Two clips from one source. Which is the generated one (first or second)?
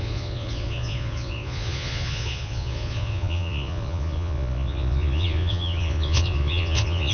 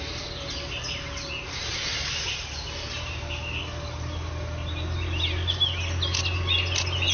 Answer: first